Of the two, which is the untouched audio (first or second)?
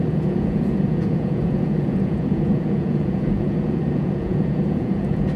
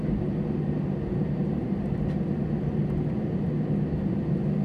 second